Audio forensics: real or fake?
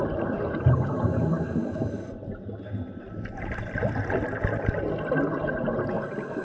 real